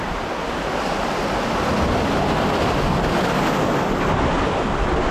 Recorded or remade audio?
recorded